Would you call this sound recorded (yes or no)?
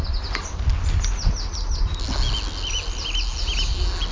yes